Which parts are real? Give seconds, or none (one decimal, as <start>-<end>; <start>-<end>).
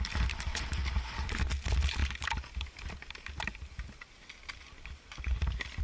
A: 0.0-5.8